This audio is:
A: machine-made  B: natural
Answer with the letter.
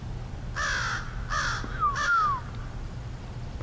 B